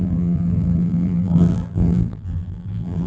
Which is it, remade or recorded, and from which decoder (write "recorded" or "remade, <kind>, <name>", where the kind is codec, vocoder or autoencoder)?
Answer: remade, vocoder, BigVGAN v2